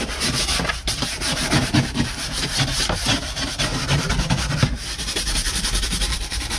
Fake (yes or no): yes